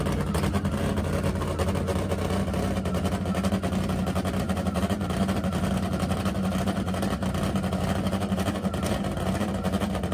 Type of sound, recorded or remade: recorded